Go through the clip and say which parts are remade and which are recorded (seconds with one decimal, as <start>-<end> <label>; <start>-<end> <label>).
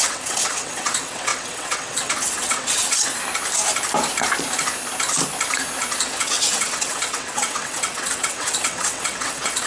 0.0-3.1 remade; 3.1-6.0 recorded; 6.0-9.7 remade